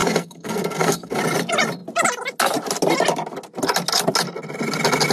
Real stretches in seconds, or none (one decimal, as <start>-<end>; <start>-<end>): 1.2-5.1